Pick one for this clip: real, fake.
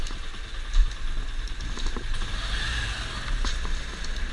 real